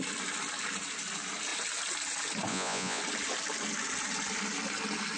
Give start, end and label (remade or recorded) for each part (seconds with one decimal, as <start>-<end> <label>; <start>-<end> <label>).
0.0-2.5 recorded; 2.5-3.0 remade; 3.0-5.2 recorded